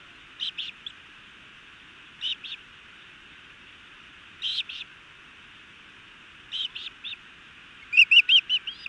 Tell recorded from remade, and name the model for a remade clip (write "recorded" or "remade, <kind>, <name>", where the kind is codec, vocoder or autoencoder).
recorded